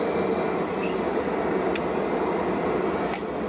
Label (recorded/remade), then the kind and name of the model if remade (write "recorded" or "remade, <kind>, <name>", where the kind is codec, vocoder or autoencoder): recorded